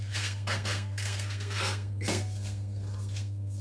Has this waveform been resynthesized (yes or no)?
yes